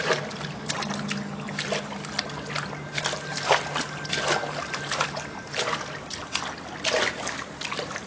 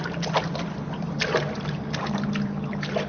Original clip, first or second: first